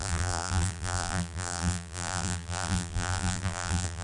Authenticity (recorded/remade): remade